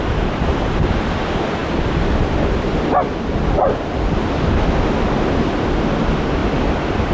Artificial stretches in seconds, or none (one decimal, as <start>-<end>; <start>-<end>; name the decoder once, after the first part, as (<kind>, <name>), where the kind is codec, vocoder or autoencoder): none